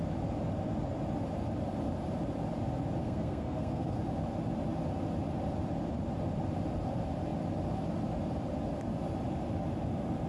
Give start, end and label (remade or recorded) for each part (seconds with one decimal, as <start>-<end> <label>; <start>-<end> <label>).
0.0-3.0 recorded; 3.0-4.0 remade; 4.0-10.3 recorded